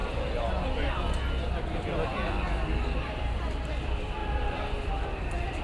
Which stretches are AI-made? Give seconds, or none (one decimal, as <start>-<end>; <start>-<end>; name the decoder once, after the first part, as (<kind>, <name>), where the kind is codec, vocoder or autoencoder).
1.6-4.2 (vocoder, BigVGAN v2); 4.9-5.6